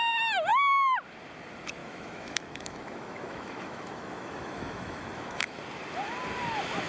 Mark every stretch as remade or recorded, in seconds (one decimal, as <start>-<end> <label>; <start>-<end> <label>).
0.0-1.8 recorded; 1.8-5.6 remade; 5.6-6.9 recorded